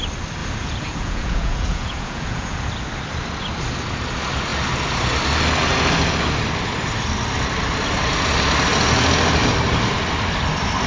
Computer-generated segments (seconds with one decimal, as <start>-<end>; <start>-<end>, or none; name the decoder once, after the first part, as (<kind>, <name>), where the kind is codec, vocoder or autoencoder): 0.4-2.7 (vocoder, Vocos)